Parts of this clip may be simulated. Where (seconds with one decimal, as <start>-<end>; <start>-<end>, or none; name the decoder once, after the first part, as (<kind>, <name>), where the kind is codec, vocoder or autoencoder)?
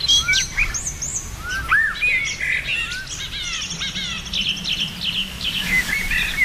5.2-5.9 (codec, DAC)